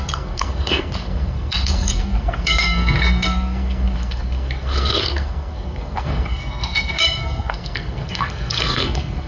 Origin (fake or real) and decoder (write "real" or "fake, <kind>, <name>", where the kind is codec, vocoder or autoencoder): fake, codec, SNAC